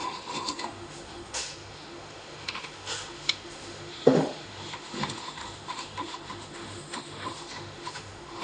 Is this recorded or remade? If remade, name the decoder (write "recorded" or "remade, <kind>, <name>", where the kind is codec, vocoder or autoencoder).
remade, autoencoder, DAC-VAE